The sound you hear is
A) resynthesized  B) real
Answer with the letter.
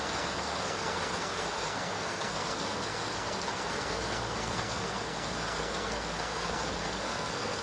A